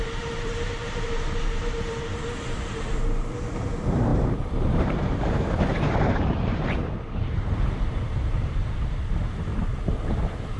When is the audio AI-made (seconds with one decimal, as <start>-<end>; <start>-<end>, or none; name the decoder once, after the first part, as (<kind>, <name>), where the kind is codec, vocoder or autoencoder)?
0.0-9.5 (vocoder, BigVGAN v2); 10.0-10.6